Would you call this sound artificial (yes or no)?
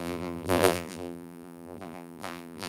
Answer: yes